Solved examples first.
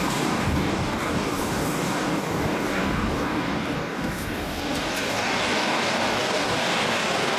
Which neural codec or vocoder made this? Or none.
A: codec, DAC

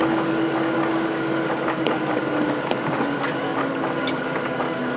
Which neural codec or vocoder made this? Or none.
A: codec, DAC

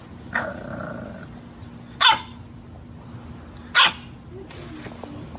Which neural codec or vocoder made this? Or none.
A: none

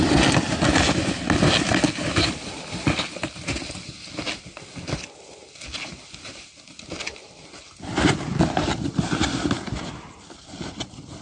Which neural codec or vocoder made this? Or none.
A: none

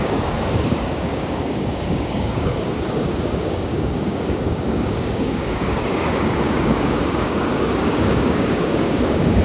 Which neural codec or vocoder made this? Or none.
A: codec, DAC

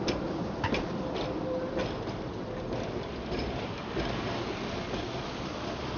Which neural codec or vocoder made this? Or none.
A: none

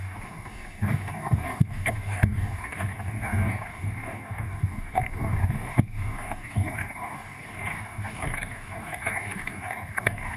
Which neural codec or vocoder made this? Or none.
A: codec, DAC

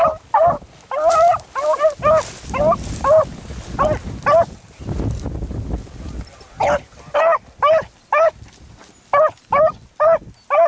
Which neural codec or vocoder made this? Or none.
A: none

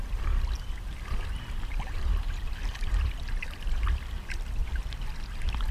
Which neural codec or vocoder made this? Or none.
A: none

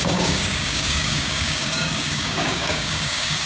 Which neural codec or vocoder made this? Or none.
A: codec, DAC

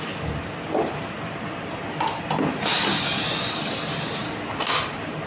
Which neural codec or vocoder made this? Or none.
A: none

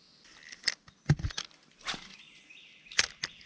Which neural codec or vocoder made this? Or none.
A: none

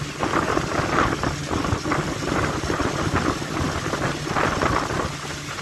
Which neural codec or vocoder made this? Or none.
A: none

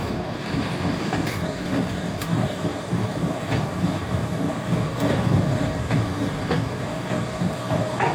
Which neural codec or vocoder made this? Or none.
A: codec, DAC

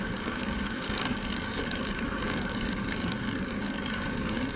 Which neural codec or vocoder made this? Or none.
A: codec, DAC